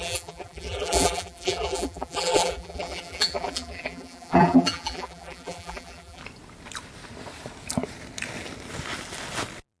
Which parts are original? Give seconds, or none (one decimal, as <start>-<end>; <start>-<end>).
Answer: 6.2-9.8